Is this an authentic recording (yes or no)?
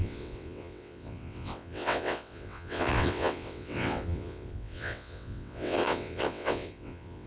no